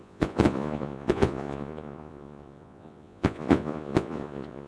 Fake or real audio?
fake